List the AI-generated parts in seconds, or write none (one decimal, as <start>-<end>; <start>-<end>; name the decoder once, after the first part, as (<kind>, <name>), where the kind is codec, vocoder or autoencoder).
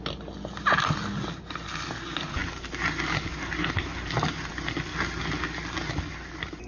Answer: none